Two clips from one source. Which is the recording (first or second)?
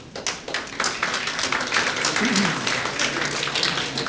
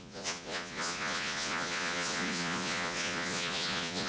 first